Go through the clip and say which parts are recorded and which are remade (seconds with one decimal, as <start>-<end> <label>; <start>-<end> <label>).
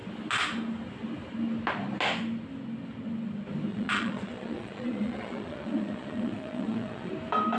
0.0-3.7 recorded; 3.7-7.1 remade; 7.1-7.6 recorded